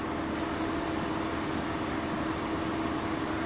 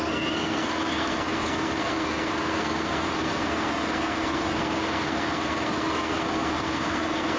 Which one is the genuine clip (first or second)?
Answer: first